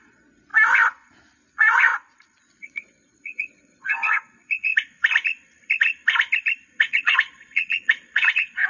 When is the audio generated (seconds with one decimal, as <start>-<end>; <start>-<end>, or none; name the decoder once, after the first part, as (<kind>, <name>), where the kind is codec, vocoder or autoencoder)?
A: 0.0-0.5 (vocoder, Vocos); 1.5-1.9; 2.4-4.7; 6.8-8.7